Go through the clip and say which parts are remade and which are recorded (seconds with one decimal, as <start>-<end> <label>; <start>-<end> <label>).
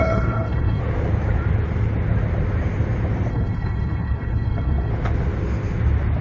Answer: 0.0-0.8 remade; 0.8-3.3 recorded; 3.3-4.9 remade; 4.9-6.2 recorded